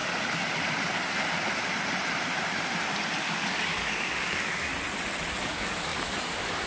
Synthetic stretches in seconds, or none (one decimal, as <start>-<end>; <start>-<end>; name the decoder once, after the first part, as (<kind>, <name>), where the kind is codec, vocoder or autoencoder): 3.2-4.7 (codec, DAC); 5.4-6.7